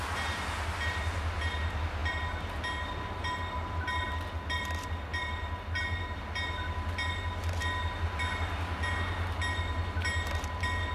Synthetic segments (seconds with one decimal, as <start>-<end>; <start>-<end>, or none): none